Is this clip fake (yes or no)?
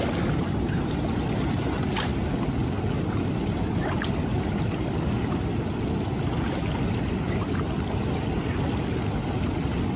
no